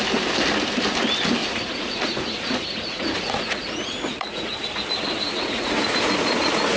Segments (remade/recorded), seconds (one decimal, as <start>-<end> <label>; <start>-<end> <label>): 0.0-1.4 recorded; 1.4-4.6 remade; 4.6-5.2 recorded; 5.2-6.8 remade